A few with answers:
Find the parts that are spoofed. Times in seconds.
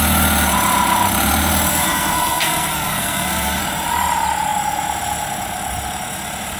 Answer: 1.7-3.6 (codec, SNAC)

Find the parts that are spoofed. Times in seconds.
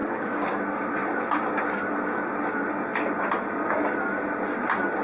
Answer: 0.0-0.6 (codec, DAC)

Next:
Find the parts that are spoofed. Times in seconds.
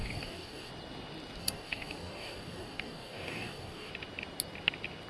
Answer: 0.0-0.7 (codec, DAC); 1.4-3.9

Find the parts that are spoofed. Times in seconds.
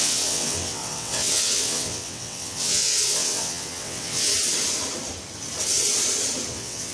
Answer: 0.0-4.3 (vocoder, WaveNeXt); 6.5-6.9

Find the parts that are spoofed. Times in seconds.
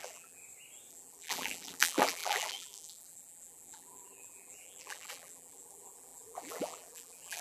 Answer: 0.0-0.4 (vocoder, BigVGAN v2); 0.9-7.4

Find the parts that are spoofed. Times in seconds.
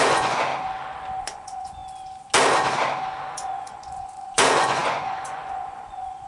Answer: 0.0-0.5 (vocoder, Vocos); 1.2-1.8; 3.3-6.3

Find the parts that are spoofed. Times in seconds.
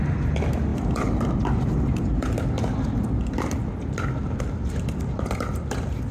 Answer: none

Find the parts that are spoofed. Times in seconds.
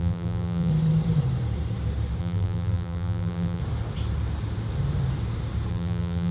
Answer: 0.0-0.7 (vocoder, BigVGAN v2); 2.2-3.6; 5.7-6.3